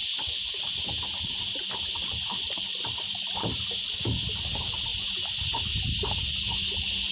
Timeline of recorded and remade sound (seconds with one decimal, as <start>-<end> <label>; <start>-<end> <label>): 0.0-1.2 recorded; 1.2-4.9 remade; 4.9-7.1 recorded